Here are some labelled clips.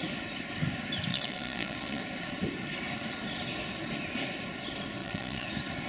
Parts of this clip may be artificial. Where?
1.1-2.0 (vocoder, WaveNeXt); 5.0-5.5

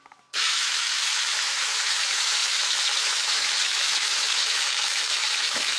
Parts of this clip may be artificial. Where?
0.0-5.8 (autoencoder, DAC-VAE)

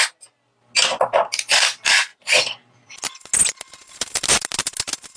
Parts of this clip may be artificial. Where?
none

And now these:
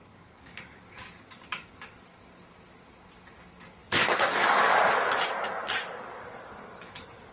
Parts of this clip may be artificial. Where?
0.0-2.2 (codec, DAC); 3.8-7.3

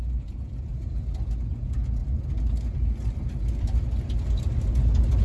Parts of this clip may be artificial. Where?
0.0-0.7 (vocoder, Vocos); 1.5-2.0

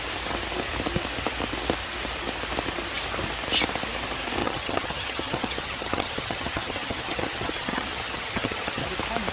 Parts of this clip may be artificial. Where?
4.4-8.9 (vocoder, HiFi-GAN)

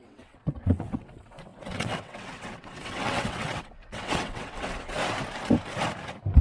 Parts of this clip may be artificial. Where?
0.0-5.0 (vocoder, WaveNeXt)

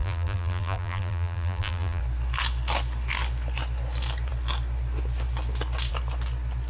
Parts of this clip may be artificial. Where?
0.0-2.0 (vocoder, BigVGAN v2)